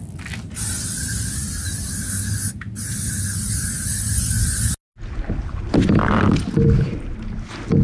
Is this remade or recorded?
recorded